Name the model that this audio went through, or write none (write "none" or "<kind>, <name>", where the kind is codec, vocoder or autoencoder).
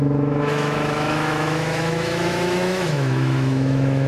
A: autoencoder, DAC-VAE